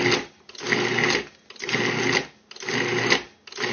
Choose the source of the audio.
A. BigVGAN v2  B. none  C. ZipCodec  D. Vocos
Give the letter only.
B